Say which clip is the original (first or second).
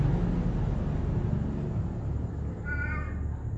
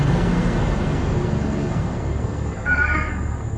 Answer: first